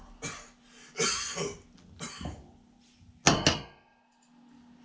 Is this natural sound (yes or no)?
yes